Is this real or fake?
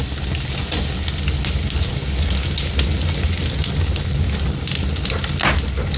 real